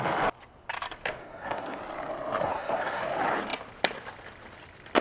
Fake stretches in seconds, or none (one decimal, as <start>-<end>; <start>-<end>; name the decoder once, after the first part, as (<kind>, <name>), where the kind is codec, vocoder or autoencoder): 1.2-1.8 (codec, SNAC); 2.4-3.0